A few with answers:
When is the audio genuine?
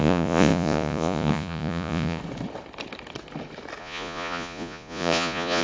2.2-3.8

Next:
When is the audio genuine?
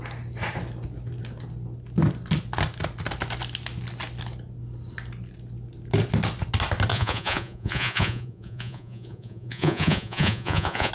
0.0-6.9